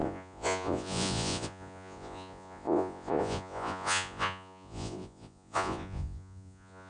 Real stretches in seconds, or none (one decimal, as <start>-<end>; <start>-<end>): none